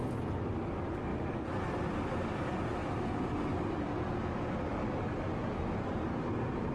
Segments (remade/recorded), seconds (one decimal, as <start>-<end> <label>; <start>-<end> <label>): 0.0-6.7 recorded